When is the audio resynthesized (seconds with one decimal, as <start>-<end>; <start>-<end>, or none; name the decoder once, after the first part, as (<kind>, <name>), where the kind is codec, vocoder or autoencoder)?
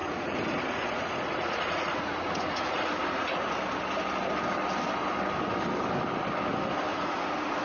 0.0-3.5 (vocoder, Vocos); 6.9-7.6